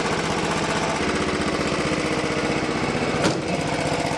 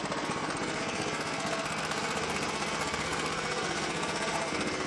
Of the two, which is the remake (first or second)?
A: second